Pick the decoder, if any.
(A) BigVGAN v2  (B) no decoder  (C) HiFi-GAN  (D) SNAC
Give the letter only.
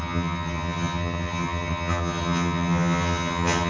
C